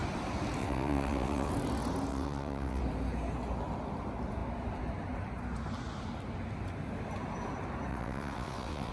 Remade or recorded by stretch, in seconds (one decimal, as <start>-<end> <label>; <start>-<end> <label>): 0.0-0.6 recorded; 0.6-1.5 remade; 1.5-2.1 recorded; 2.1-2.8 remade; 2.8-7.9 recorded; 7.9-8.9 remade